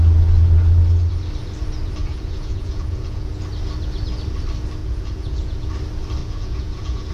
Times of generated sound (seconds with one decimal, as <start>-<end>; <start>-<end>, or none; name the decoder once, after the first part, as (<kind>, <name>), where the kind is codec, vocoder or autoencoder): 2.0-3.4 (vocoder, Vocos); 4.8-5.7; 6.2-7.1